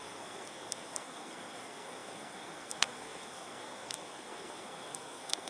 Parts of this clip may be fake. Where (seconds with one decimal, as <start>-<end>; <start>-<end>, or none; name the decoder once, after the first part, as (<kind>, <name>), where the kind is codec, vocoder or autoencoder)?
0.0-5.5 (codec, SNAC)